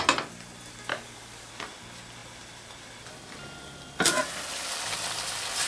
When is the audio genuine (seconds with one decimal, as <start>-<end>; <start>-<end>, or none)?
0.0-0.9; 1.5-5.7